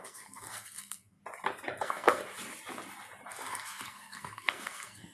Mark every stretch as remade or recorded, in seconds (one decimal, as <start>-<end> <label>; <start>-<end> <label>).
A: 0.0-1.2 remade; 1.2-1.8 recorded; 1.8-2.2 remade; 2.2-3.3 recorded; 3.3-5.1 remade